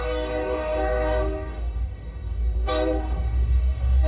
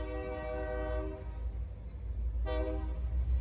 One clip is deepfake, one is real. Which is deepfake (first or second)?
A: first